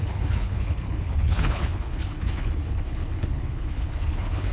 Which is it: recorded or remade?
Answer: remade